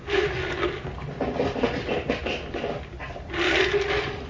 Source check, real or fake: real